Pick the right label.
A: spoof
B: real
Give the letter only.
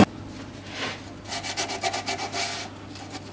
B